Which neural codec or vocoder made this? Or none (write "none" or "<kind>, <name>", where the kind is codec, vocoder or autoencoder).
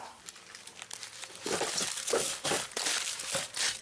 none